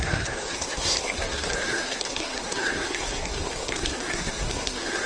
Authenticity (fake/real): fake